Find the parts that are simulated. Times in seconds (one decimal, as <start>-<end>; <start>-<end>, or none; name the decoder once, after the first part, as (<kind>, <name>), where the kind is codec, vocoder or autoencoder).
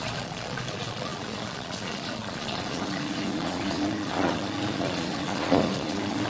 0.0-6.3 (vocoder, Vocos)